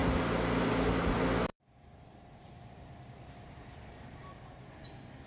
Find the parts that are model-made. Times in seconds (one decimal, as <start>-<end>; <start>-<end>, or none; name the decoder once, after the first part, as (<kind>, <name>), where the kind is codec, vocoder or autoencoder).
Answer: 1.5-4.7 (vocoder, BigVGAN v2)